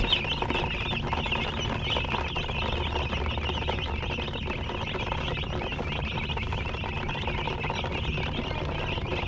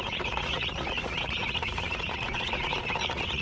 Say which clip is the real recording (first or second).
first